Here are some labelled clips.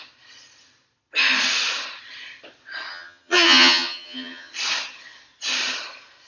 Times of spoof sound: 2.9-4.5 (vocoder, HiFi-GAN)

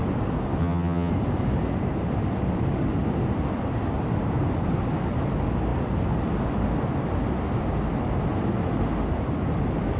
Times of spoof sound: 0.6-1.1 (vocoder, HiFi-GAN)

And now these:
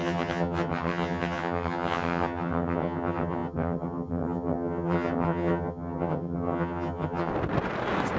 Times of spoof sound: 0.0-7.3 (vocoder, HiFi-GAN)

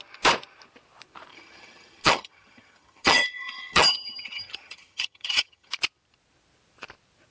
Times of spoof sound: 1.3-5.7 (vocoder, HiFi-GAN)

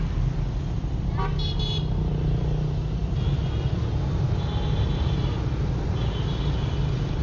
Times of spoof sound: none

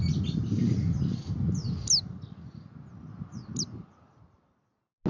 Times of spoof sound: none

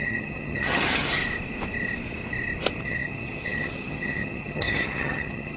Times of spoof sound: 0.0-1.2 (vocoder, HiFi-GAN); 2.8-5.6